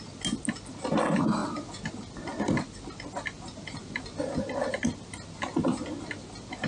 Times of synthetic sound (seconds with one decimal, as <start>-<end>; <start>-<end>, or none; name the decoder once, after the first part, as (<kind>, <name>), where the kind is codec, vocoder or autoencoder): none